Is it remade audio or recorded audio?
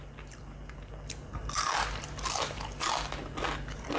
recorded